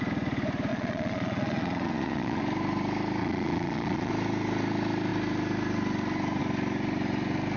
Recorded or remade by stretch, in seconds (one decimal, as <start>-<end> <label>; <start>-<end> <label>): 0.0-0.7 recorded; 0.7-2.4 remade; 2.4-3.2 recorded; 3.2-4.1 remade; 4.1-7.6 recorded